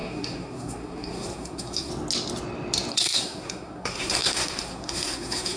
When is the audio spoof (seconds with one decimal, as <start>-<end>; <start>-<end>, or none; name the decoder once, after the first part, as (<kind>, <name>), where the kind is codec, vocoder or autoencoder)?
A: 0.0-1.9 (codec, SNAC); 2.9-5.6